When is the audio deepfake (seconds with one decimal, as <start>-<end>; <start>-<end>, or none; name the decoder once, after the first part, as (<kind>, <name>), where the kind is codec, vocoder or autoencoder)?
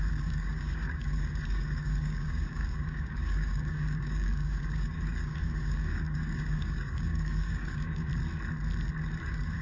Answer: 0.0-8.1 (codec, DAC); 9.2-9.6